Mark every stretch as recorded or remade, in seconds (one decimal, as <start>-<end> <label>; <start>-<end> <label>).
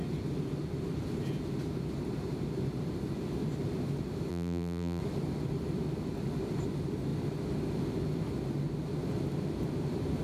0.0-4.3 recorded; 4.3-5.0 remade; 5.0-10.2 recorded